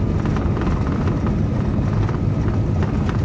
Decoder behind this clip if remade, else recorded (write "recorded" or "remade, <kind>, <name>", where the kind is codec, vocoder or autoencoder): recorded